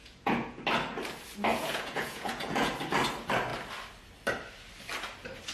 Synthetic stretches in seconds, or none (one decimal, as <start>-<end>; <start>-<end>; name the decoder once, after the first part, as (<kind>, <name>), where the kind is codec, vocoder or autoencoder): 0.0-0.6 (vocoder, Vocos); 1.5-2.7